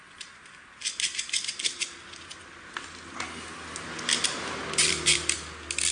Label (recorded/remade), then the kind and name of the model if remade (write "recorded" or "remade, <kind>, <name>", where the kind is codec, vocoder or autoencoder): recorded